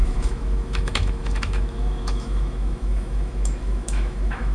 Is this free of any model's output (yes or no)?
no